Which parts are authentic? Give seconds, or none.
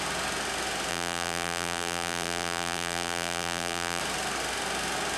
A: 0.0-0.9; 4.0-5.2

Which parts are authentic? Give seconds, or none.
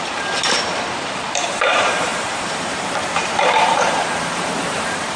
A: none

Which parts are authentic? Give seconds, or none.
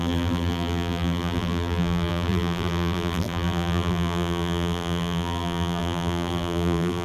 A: none